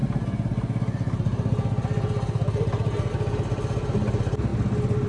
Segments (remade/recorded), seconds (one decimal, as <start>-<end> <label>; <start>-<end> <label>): 0.0-4.5 recorded; 4.5-5.1 remade